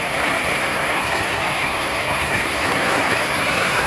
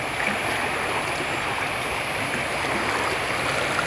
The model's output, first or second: first